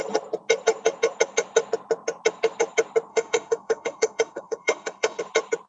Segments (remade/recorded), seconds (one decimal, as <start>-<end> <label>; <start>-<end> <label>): 0.0-3.1 recorded; 3.1-5.2 remade; 5.2-5.7 recorded